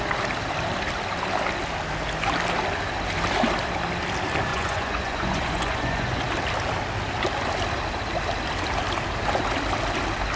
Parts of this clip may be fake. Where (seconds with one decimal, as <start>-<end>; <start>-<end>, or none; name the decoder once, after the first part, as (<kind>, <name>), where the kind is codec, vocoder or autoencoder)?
4.5-6.2 (vocoder, Vocos)